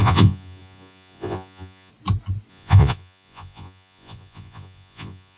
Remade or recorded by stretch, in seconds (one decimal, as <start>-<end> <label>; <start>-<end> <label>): 0.0-1.9 remade; 1.9-2.5 recorded; 2.5-5.4 remade

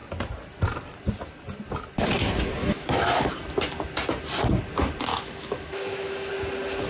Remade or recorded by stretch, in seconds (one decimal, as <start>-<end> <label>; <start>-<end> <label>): 0.0-2.6 recorded; 2.6-3.3 remade; 3.3-5.1 recorded; 5.1-6.3 remade; 6.3-6.9 recorded

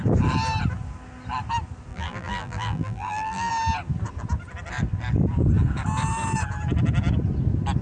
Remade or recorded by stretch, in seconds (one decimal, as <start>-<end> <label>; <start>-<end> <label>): 0.0-1.9 recorded; 1.9-3.5 remade; 3.5-7.8 recorded

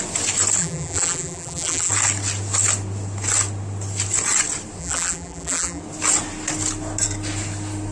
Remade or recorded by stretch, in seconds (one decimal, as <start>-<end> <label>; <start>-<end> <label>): 0.0-0.6 recorded; 0.6-1.9 remade; 1.9-4.8 recorded; 4.8-5.8 remade; 5.8-7.9 recorded

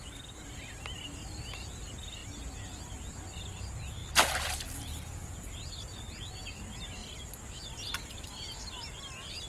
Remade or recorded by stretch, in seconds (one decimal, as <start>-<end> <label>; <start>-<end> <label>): 0.0-9.5 recorded

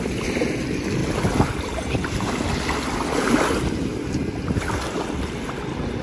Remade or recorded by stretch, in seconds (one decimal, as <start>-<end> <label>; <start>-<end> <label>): 0.0-6.0 recorded

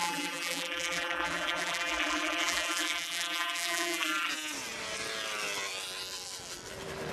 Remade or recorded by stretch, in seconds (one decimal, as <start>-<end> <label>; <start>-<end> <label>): 0.0-4.3 remade; 4.3-7.1 recorded

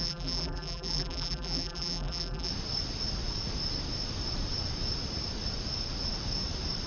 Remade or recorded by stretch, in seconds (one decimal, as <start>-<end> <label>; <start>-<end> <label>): 0.0-2.5 remade; 2.5-6.9 recorded